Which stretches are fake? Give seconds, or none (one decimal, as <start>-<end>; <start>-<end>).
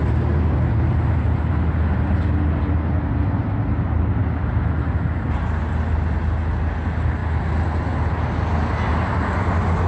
none